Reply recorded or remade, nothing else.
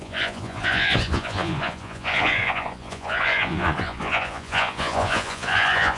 remade